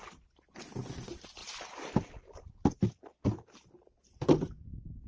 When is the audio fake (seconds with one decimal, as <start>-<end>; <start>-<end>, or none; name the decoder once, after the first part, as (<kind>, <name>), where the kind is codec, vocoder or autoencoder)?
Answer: none